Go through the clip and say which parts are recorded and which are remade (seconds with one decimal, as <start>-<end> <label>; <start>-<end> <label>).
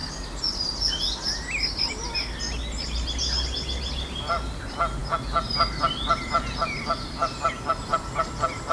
0.0-8.7 recorded